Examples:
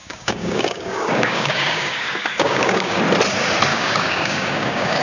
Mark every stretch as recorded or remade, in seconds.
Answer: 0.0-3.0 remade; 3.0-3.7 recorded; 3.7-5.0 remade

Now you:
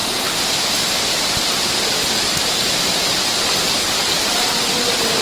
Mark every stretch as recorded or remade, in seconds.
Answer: 0.0-1.2 recorded; 1.2-5.2 remade

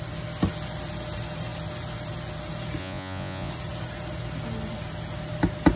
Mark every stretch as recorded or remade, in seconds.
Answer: 0.0-2.8 recorded; 2.8-3.5 remade; 3.5-5.8 recorded

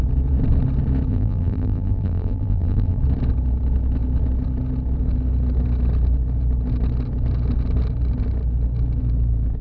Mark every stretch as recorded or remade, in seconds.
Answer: 0.0-1.1 recorded; 1.1-3.0 remade; 3.0-9.6 recorded

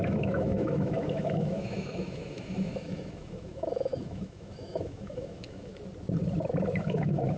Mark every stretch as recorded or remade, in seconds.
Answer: 0.0-5.7 remade; 5.7-6.8 recorded; 6.8-7.4 remade

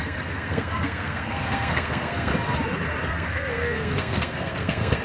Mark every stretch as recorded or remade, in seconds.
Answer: 0.0-2.3 remade; 2.3-3.1 recorded; 3.1-5.0 remade